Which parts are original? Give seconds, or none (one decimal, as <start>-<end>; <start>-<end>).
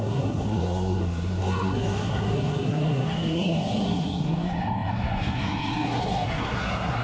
none